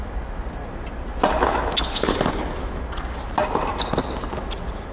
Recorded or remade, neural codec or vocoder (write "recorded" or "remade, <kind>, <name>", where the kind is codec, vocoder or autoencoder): recorded